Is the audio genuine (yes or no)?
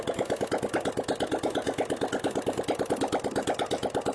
yes